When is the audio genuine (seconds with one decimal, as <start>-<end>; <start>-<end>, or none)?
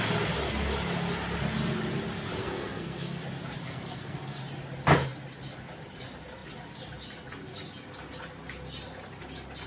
0.0-2.4; 3.2-3.6; 4.4-9.7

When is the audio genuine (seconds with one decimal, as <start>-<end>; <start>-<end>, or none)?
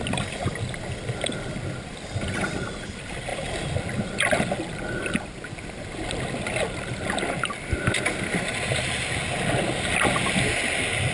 0.0-11.1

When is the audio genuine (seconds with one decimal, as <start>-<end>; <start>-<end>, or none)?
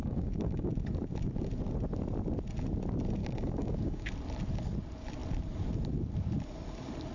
0.7-3.2; 4.1-7.1